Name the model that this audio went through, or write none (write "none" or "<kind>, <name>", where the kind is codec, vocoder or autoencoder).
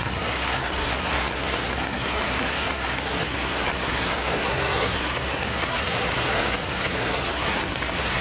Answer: codec, SNAC